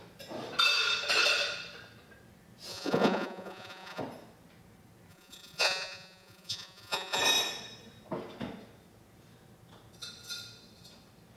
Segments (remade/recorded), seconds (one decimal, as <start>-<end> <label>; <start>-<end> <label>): 0.0-2.7 recorded; 2.7-4.0 remade; 4.0-5.1 recorded; 5.1-7.2 remade; 7.2-11.4 recorded